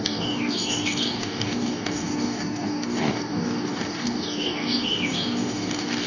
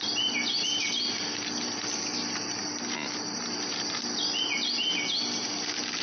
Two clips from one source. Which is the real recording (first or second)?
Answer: second